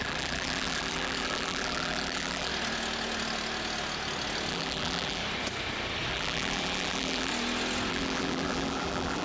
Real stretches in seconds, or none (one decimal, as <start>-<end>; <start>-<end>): 2.5-4.5; 5.2-6.1; 7.3-7.9